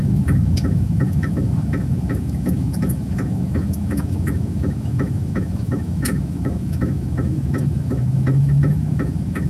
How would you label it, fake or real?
fake